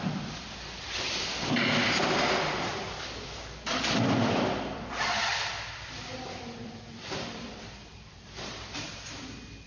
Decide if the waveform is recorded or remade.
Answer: remade